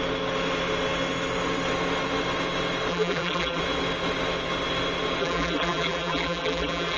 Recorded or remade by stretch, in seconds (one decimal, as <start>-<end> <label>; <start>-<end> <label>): 0.0-2.9 recorded; 2.9-3.6 remade; 3.6-5.2 recorded; 5.2-7.0 remade